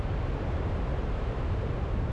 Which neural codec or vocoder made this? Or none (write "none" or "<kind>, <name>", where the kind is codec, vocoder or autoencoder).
vocoder, BigVGAN v2